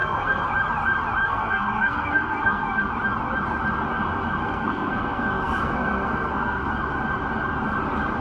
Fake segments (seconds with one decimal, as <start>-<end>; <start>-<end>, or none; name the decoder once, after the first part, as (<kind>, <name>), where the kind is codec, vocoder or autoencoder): 0.0-0.5 (codec, SNAC); 1.2-2.9; 4.4-6.7